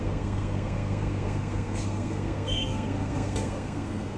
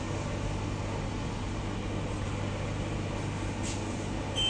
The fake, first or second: first